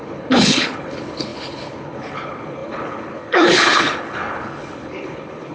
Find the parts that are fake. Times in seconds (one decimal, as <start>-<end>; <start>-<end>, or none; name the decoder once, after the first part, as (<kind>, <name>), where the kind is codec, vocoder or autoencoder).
0.0-5.5 (codec, HILCodec)